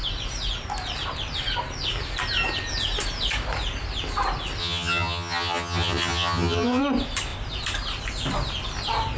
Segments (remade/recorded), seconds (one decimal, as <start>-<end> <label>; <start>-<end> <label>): 0.0-4.6 recorded; 4.6-6.8 remade; 6.8-9.2 recorded